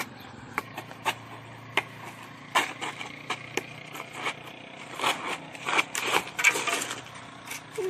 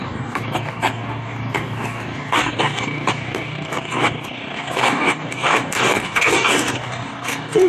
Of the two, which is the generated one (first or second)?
second